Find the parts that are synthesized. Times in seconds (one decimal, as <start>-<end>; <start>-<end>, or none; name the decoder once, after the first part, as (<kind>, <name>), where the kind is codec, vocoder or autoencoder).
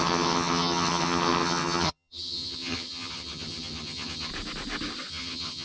0.0-4.3 (vocoder, HiFi-GAN); 5.1-5.6